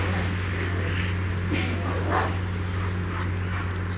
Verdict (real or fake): real